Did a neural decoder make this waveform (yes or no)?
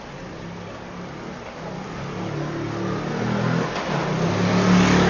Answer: no